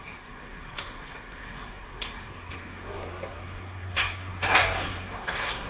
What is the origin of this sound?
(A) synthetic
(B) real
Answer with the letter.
A